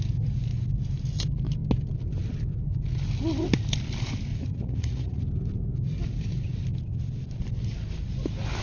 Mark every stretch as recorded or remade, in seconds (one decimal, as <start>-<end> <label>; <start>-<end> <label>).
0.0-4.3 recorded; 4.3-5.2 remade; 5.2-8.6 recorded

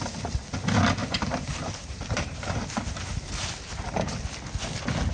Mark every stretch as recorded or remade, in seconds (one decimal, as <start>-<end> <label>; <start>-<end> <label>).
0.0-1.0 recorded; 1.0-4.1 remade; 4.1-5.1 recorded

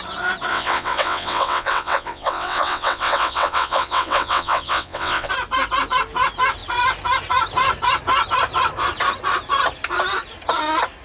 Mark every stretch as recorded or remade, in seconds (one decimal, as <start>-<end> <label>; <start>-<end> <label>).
0.0-0.5 recorded; 0.5-5.3 remade; 5.3-11.0 recorded

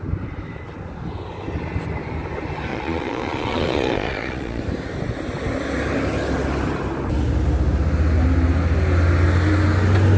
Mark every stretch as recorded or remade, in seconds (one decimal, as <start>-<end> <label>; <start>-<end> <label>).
0.0-2.7 recorded; 2.7-4.6 remade; 4.6-10.2 recorded

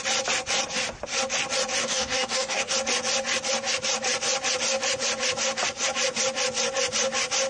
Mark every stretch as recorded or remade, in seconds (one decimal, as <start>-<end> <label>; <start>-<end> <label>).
0.0-1.8 recorded; 1.8-2.7 remade; 2.7-7.5 recorded